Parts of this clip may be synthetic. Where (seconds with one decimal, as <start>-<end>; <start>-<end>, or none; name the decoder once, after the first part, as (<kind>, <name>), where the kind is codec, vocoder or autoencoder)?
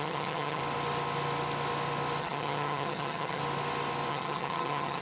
0.0-0.6 (vocoder, HiFi-GAN); 2.2-3.4; 4.1-5.0